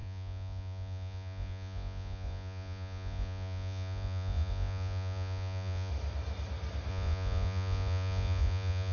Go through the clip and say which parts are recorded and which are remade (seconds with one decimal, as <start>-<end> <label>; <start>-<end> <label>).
0.0-5.9 remade; 5.9-6.9 recorded; 6.9-8.9 remade